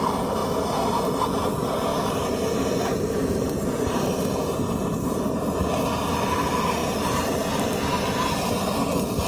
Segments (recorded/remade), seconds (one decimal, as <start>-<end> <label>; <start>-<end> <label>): 0.0-1.9 recorded; 1.9-5.8 remade; 5.8-6.8 recorded; 6.8-7.6 remade; 7.6-9.3 recorded